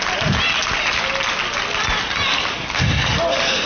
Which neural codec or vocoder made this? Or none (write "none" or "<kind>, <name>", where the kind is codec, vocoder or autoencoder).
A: none